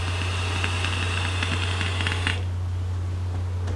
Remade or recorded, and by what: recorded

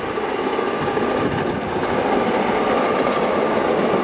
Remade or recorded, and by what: recorded